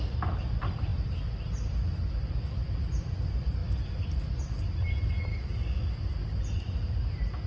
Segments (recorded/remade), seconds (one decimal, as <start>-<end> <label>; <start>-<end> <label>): 0.0-5.3 recorded; 5.3-5.9 remade; 5.9-7.5 recorded

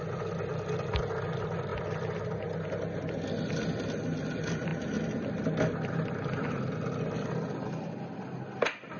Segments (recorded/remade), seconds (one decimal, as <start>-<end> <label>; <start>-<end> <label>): 0.0-9.0 recorded

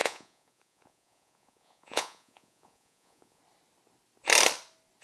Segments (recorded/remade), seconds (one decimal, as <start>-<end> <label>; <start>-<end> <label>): 0.0-3.4 remade; 3.4-5.0 recorded

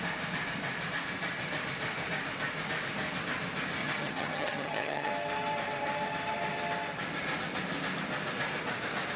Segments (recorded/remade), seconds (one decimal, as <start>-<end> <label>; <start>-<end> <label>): 0.0-3.8 recorded; 3.8-5.1 remade; 5.1-9.2 recorded

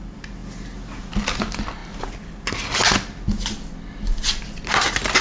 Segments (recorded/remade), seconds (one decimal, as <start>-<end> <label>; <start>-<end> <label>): 0.0-5.2 recorded

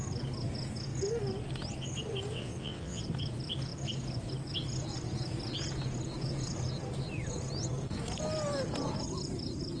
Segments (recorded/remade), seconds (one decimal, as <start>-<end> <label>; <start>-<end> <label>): 0.0-2.3 recorded; 2.3-3.0 remade; 3.0-9.8 recorded

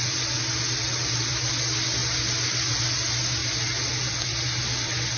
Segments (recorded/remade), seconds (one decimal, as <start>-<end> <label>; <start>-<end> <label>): 0.0-0.9 recorded; 0.9-1.5 remade; 1.5-5.2 recorded